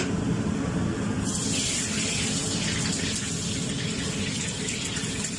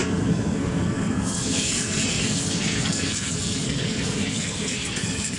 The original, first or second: first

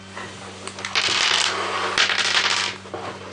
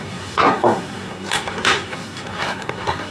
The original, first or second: first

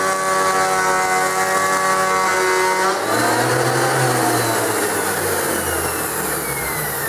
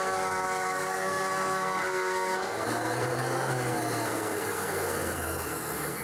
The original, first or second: first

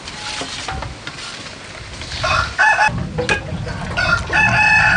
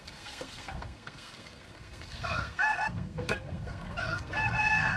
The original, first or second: first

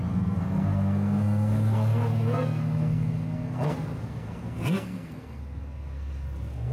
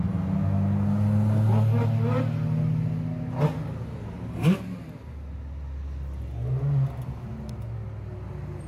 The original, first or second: second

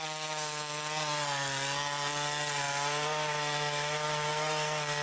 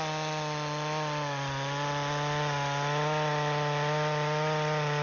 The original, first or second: second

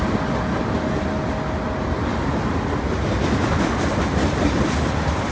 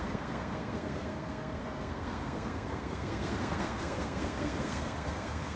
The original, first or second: first